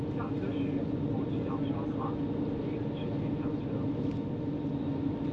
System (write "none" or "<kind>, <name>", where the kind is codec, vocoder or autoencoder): none